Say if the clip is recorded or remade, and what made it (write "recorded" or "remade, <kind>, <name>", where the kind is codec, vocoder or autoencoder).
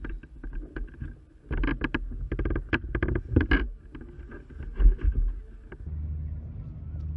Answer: recorded